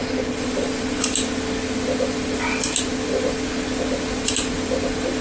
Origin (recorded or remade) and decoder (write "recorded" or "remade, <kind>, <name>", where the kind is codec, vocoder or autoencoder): recorded